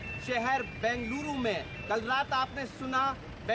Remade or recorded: recorded